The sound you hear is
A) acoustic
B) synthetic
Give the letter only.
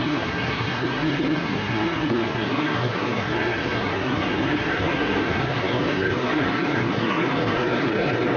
B